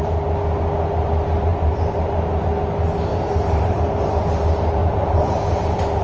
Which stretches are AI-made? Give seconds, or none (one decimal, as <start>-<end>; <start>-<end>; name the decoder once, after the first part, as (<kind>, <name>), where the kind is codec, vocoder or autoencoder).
1.5-2.4 (vocoder, BigVGAN v2); 3.1-3.8; 4.8-6.0